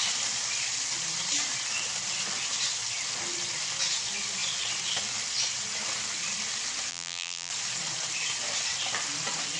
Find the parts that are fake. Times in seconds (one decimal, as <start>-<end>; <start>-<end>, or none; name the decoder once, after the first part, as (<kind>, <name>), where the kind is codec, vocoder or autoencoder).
6.9-7.5 (vocoder, BigVGAN v2)